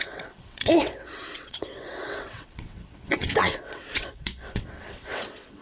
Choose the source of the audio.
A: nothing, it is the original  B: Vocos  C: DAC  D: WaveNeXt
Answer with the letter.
D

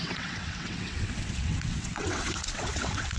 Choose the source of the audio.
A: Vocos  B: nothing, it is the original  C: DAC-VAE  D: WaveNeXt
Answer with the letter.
D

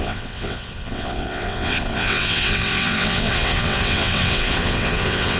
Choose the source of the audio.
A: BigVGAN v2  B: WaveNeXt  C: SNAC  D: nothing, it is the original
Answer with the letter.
B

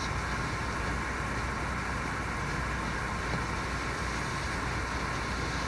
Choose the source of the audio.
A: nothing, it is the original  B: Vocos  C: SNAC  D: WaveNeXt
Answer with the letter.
A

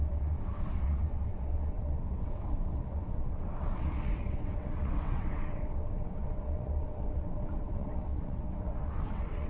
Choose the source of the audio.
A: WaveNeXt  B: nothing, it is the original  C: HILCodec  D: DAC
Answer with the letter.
A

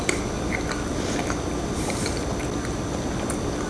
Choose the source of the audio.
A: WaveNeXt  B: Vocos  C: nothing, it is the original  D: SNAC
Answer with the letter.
C